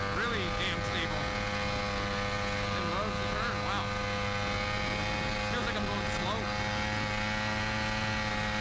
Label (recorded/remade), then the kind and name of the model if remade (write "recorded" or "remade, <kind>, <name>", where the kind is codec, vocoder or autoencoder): recorded